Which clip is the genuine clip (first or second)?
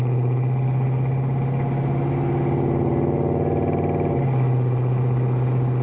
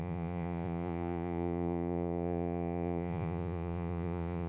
first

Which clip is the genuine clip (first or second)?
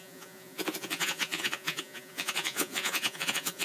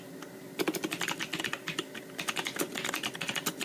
second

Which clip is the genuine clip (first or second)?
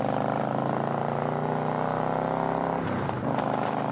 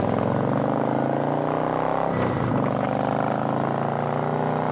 second